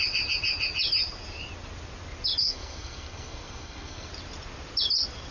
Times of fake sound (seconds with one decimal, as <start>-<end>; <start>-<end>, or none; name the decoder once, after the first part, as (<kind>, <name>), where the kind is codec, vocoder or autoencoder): 2.4-4.1 (codec, SNAC)